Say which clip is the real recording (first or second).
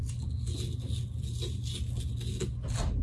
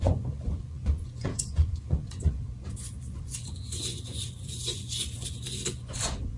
first